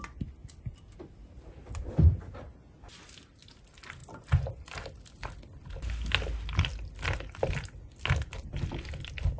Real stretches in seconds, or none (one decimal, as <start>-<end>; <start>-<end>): 0.0-9.4